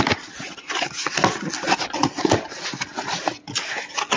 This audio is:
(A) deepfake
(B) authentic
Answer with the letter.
B